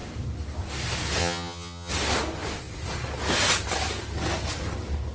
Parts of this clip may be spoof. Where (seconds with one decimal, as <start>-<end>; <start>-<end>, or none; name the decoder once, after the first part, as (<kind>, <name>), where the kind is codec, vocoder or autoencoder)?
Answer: 1.2-1.9 (vocoder, HiFi-GAN)